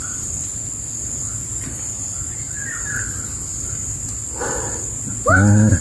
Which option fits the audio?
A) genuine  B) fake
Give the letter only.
A